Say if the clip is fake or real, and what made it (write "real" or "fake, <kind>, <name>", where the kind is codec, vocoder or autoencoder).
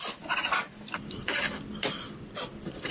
real